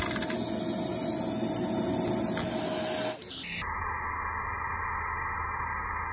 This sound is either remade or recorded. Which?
recorded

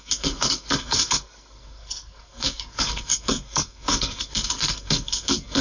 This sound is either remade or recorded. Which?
remade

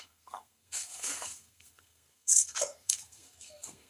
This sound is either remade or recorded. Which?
remade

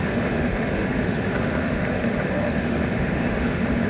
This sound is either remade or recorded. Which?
remade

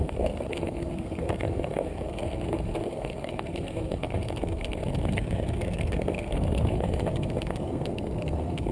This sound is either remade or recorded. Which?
remade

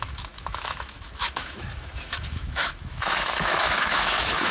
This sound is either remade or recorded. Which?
remade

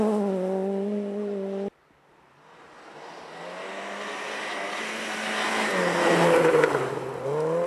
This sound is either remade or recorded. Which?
recorded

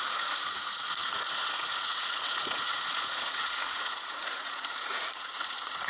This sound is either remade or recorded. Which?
remade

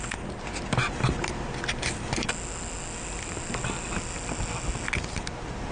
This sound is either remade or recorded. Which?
recorded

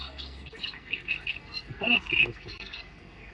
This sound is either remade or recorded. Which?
remade